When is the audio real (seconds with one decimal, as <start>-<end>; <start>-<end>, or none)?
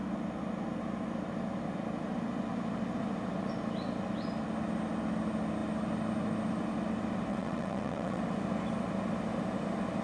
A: 0.0-7.3; 8.2-10.0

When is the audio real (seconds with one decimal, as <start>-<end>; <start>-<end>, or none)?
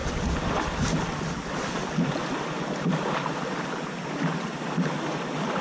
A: 0.0-5.6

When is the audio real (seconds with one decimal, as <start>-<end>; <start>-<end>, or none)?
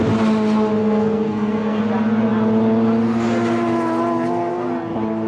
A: 0.0-0.8; 1.8-5.3